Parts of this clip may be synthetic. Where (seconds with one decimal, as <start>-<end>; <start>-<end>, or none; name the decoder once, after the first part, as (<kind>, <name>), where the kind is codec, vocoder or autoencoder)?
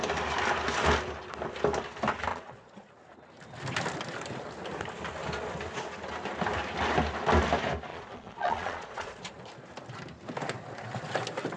2.3-2.9 (vocoder, Vocos); 7.9-9.3